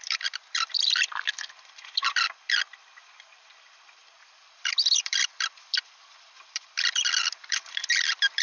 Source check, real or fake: fake